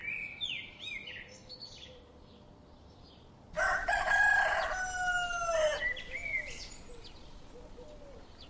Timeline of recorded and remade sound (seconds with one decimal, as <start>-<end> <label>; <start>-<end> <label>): 0.0-8.5 recorded